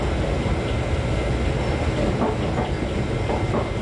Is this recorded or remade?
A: recorded